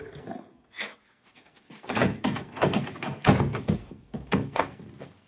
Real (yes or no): no